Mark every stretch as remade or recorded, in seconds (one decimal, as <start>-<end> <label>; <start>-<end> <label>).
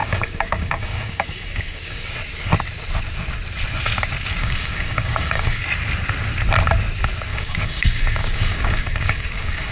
0.0-2.1 remade; 2.1-4.4 recorded; 4.4-5.6 remade; 5.6-7.3 recorded; 7.3-9.7 remade